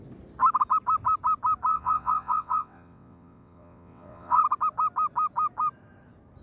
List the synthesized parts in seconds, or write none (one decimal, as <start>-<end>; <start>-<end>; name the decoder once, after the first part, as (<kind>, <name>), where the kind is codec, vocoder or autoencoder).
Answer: 1.7-4.4 (vocoder, WaveNeXt)